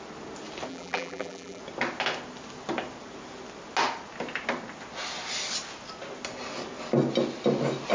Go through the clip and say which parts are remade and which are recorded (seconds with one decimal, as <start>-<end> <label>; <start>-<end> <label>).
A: 0.0-0.7 recorded; 0.7-1.6 remade; 1.6-7.9 recorded